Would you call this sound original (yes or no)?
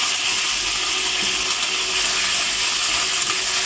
yes